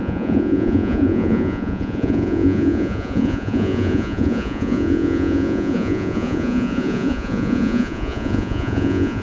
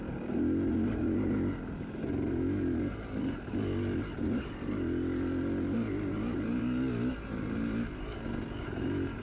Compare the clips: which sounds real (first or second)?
second